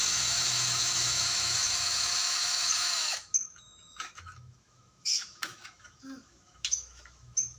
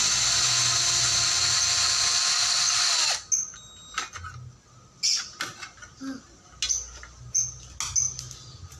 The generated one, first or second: first